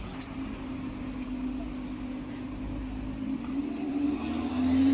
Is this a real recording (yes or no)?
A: yes